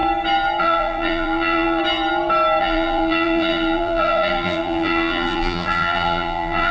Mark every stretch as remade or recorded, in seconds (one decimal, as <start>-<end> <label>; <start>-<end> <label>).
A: 0.0-0.6 recorded; 0.6-1.8 remade; 1.8-2.6 recorded; 2.6-6.7 remade